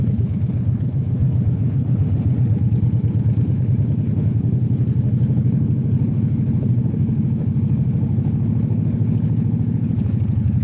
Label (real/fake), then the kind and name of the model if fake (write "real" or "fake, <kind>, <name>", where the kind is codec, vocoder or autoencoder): fake, codec, HILCodec